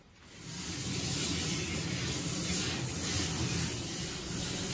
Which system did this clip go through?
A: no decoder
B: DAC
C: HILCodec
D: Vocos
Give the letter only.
A